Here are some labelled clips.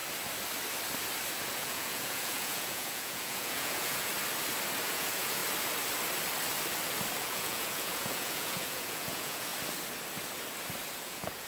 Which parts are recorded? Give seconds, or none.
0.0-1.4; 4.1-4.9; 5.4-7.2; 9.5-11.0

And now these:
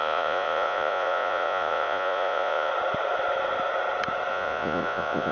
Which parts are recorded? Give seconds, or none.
2.7-4.3

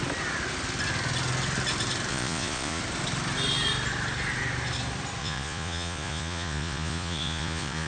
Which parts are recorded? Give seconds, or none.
0.0-2.1; 2.8-5.2